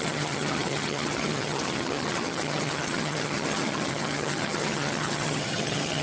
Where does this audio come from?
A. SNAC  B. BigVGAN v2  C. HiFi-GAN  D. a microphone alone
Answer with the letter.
C